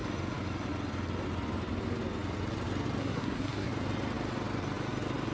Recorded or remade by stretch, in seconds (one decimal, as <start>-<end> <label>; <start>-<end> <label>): 0.0-3.0 recorded; 3.0-3.7 remade; 3.7-5.3 recorded